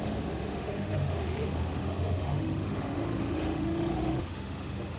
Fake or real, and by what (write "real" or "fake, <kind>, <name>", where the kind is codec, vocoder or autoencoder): fake, autoencoder, DAC-VAE